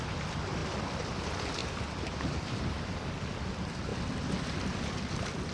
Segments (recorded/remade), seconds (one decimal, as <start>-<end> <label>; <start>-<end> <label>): 0.0-1.6 recorded; 1.6-3.1 remade; 3.1-5.5 recorded

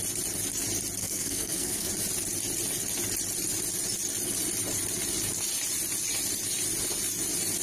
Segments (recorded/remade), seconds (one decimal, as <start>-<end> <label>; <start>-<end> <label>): 0.0-1.0 recorded; 1.0-1.9 remade; 1.9-7.6 recorded

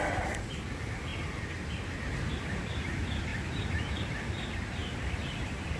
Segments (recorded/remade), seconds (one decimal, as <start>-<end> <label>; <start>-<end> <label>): 0.0-5.8 remade

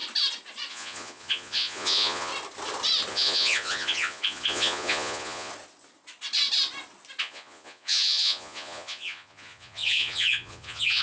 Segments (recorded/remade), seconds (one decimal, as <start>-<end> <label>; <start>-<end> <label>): 0.0-0.7 recorded; 0.7-2.3 remade; 2.3-3.1 recorded; 3.1-5.5 remade; 5.5-7.2 recorded; 7.2-11.0 remade

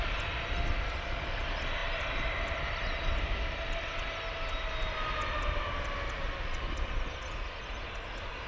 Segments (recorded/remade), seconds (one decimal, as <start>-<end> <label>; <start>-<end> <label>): 0.0-8.5 recorded

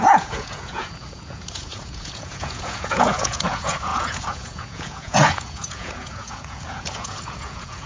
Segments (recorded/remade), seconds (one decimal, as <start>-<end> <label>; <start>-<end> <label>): 0.0-7.9 remade

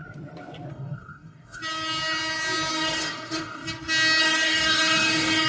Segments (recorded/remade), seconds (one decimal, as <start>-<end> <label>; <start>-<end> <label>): 0.0-0.7 recorded; 0.7-1.6 remade; 1.6-2.7 recorded; 2.7-3.6 remade; 3.6-4.2 recorded; 4.2-5.5 remade